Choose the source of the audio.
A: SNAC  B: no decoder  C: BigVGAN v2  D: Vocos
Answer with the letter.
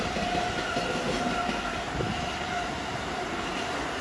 B